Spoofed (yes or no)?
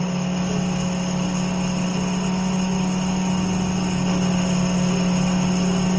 no